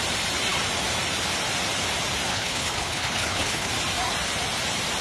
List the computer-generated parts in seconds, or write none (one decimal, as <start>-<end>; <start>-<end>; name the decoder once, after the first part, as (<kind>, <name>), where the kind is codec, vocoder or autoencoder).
2.3-3.7 (codec, HILCodec)

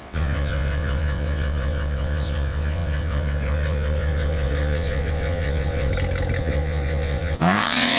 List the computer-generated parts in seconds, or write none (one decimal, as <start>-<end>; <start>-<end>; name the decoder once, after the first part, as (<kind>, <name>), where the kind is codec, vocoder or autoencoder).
0.0-5.9 (vocoder, WaveNeXt); 6.4-8.0

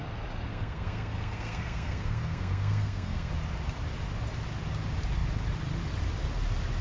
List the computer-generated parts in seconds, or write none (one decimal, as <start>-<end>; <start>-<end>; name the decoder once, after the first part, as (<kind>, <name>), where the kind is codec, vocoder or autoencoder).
0.5-3.3 (codec, SNAC)

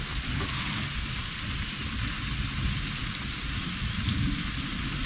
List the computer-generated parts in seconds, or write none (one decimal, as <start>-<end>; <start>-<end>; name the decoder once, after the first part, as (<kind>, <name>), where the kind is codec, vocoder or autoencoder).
none

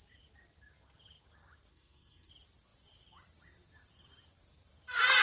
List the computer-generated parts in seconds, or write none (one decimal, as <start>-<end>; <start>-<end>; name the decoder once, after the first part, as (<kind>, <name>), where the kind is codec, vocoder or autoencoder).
1.7-2.3 (codec, SNAC)

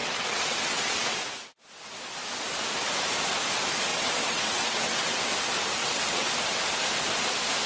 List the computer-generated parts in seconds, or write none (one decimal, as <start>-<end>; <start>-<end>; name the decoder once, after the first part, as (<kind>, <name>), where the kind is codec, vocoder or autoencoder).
0.0-1.2 (vocoder, WaveNeXt); 3.9-5.2; 5.8-6.3